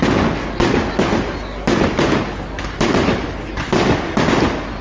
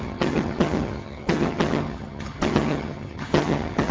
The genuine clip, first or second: first